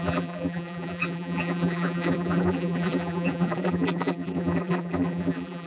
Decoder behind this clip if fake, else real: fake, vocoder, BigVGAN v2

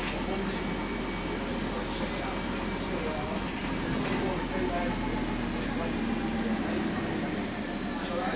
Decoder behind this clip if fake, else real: real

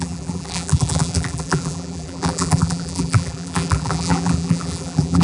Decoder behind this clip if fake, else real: fake, vocoder, BigVGAN v2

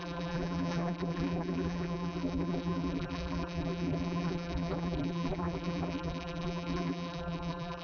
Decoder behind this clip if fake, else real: fake, vocoder, BigVGAN v2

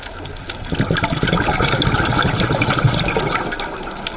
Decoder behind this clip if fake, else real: real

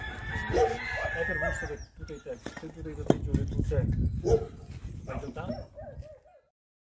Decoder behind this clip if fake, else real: real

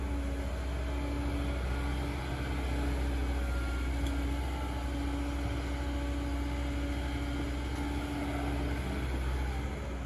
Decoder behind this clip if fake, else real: real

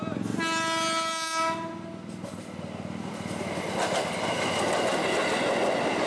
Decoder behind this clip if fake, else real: real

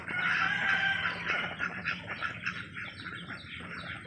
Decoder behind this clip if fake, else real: fake, vocoder, BigVGAN v2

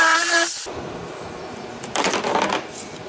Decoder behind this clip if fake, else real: fake, vocoder, BigVGAN v2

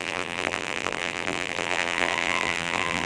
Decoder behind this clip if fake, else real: fake, vocoder, BigVGAN v2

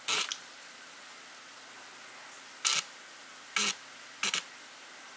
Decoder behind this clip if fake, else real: real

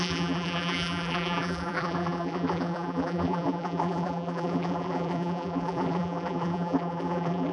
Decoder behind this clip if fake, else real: fake, vocoder, BigVGAN v2